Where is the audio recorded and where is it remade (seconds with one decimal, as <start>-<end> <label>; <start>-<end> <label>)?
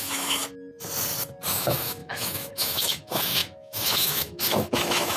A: 0.0-0.4 remade; 0.4-1.5 recorded; 1.5-5.2 remade